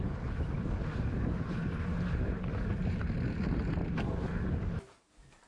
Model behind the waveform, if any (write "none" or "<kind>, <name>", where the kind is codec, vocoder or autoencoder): vocoder, BigVGAN v2